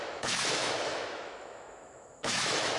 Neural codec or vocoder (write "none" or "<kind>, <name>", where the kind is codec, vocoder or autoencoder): autoencoder, DAC-VAE